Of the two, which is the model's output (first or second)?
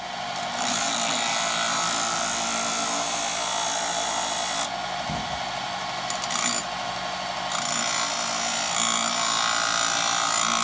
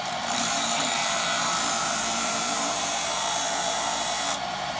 second